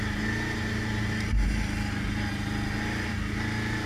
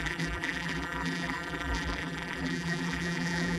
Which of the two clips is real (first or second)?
first